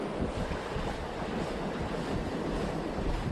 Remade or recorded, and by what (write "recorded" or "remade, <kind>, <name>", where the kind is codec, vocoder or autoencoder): recorded